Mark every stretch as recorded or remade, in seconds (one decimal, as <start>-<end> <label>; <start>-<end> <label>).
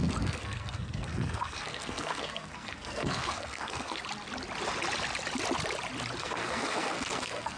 0.0-4.0 remade; 4.0-6.2 recorded; 6.2-7.6 remade